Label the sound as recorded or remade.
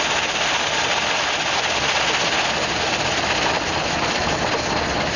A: recorded